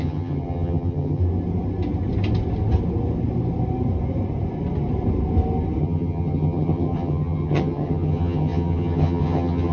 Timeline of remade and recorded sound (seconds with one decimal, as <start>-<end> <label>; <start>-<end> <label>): 0.0-1.2 remade; 1.2-5.8 recorded; 5.8-9.7 remade